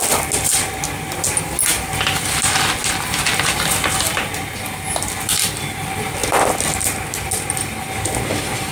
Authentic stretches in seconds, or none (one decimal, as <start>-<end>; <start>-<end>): 0.0-8.7